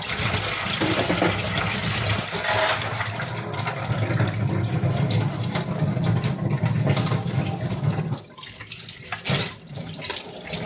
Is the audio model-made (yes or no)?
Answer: no